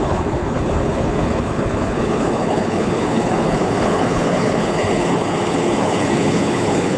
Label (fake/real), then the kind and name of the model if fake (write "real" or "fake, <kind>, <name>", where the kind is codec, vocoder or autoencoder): fake, codec, HILCodec